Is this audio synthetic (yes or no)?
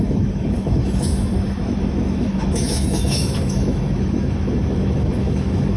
yes